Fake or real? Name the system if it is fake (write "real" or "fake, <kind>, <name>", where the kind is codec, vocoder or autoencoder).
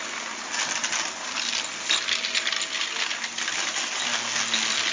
real